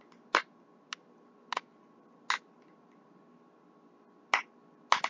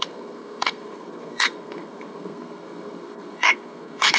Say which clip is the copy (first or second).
second